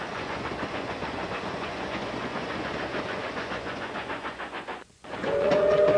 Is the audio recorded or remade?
remade